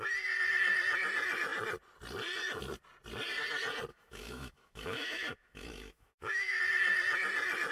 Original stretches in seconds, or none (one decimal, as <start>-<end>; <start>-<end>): 0.0-3.9; 6.6-7.7